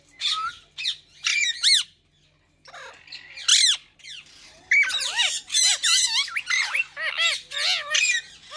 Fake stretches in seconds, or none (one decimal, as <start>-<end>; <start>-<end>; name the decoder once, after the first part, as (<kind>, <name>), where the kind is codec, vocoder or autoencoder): none